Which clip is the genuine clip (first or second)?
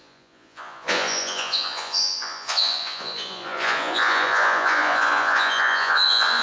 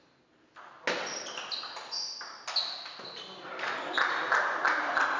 second